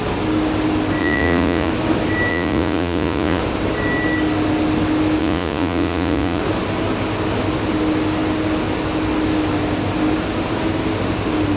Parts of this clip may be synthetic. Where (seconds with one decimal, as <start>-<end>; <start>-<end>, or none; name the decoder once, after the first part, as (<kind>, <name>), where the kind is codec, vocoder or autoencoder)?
1.0-1.7 (vocoder, Vocos); 2.3-3.4; 5.2-6.4